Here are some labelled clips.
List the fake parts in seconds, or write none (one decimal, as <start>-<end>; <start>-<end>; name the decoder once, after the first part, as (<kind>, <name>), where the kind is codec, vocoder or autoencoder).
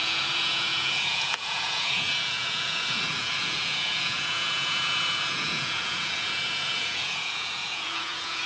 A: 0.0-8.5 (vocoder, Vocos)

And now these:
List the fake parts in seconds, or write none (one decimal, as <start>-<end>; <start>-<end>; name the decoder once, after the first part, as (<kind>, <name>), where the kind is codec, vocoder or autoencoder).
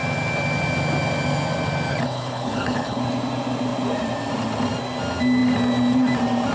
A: 1.9-3.0 (codec, HILCodec)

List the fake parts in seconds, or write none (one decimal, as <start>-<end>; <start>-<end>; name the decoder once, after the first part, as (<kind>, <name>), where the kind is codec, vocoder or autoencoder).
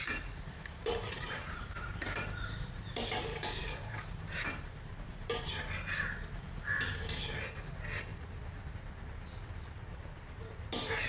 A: 0.8-5.5 (vocoder, BigVGAN v2); 8.1-8.7; 9.9-10.5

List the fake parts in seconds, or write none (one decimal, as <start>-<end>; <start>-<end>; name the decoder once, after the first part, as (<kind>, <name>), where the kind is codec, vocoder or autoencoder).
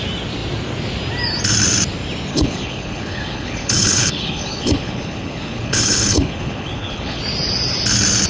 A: 2.3-7.2 (codec, HILCodec)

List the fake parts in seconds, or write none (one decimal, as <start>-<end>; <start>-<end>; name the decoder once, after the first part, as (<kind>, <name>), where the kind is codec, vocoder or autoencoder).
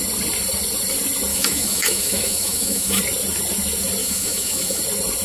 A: 1.3-3.0 (autoencoder, DAC-VAE); 4.0-4.8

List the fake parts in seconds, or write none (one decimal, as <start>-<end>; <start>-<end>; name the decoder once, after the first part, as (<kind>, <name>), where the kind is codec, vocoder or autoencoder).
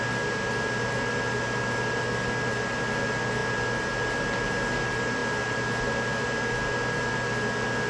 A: none